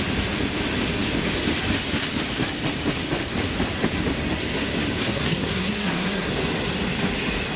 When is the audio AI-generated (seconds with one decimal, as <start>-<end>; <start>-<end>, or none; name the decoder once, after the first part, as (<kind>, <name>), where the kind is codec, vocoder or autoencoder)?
5.0-6.3 (codec, SNAC)